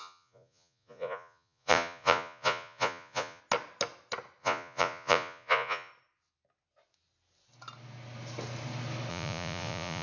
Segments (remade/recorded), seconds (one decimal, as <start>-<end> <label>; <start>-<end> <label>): 0.0-3.4 remade; 3.4-4.4 recorded; 4.4-5.9 remade; 5.9-9.1 recorded; 9.1-10.0 remade